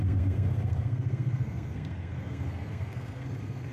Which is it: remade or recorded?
remade